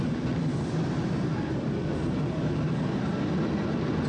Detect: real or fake real